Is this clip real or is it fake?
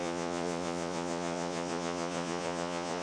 fake